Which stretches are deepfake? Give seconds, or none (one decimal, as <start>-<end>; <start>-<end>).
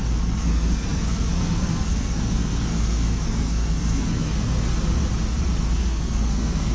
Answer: 0.0-4.7; 5.6-6.7